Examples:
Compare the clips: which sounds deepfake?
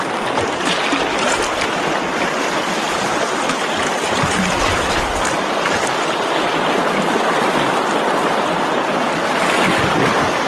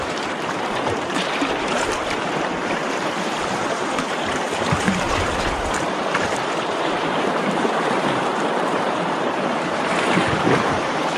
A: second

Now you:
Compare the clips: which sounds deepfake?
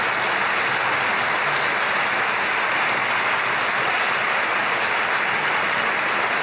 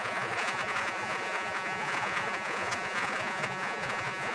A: second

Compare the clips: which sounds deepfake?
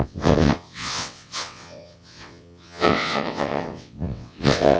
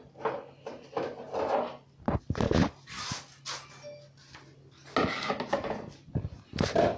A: first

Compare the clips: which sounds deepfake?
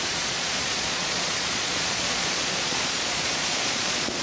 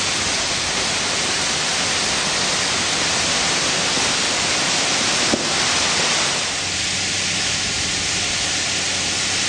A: first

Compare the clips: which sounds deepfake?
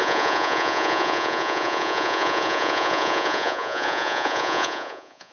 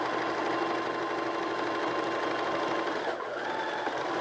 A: first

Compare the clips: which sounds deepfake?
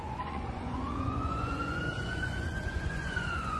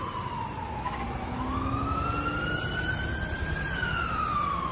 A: first